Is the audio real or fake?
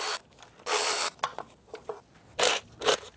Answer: real